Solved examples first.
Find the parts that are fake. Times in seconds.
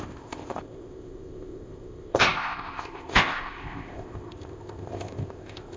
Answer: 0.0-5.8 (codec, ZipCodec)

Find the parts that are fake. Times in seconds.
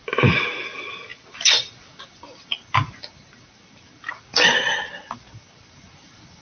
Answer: none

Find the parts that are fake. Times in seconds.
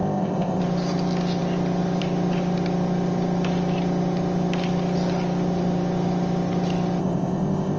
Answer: 0.0-0.6 (codec, ZipCodec); 7.0-7.8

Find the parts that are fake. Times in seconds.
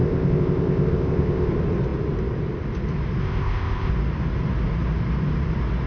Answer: 0.0-1.5 (codec, ZipCodec); 3.2-3.9